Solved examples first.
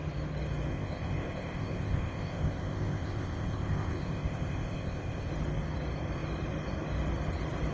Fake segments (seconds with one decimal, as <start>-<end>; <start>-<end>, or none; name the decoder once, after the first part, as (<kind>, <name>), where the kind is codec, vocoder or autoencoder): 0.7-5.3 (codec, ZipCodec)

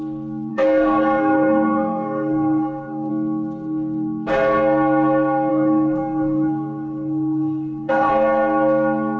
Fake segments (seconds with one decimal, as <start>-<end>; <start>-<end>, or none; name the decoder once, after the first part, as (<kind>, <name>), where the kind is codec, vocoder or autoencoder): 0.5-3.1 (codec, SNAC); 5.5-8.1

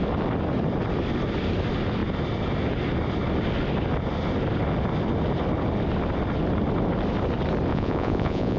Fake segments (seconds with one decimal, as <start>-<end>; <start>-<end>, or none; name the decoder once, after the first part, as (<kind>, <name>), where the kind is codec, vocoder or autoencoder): 7.7-8.6 (vocoder, Vocos)

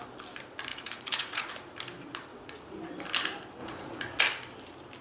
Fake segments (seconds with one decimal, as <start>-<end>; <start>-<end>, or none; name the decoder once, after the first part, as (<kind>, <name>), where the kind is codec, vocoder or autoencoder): 0.7-1.5 (vocoder, Vocos); 2.3-2.8; 3.6-4.2